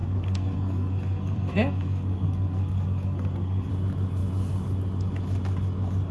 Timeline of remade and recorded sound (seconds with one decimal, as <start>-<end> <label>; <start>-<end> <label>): 0.0-3.7 remade; 3.7-6.1 recorded